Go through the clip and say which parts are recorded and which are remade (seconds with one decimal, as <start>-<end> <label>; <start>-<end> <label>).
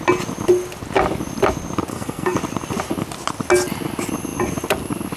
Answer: 0.0-1.9 recorded; 1.9-2.4 remade; 2.4-5.2 recorded